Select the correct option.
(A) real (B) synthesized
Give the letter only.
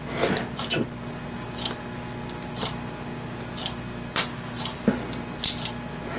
A